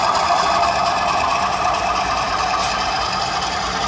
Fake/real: fake